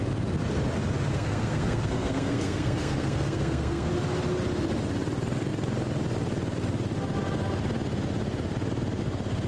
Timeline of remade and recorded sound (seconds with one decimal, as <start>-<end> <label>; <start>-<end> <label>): 0.0-1.1 recorded; 1.1-3.9 remade; 3.9-9.5 recorded